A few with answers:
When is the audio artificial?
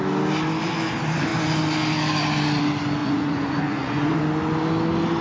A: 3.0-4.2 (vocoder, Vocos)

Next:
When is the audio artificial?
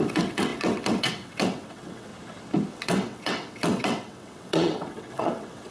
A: 0.0-2.1 (vocoder, WaveNeXt); 2.7-5.7